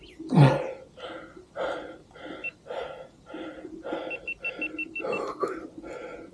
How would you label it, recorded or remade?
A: recorded